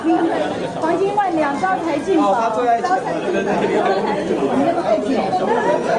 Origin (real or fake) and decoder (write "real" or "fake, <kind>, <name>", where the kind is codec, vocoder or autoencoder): real